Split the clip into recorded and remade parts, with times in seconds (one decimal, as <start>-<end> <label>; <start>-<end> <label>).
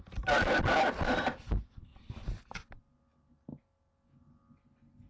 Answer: 0.0-5.1 recorded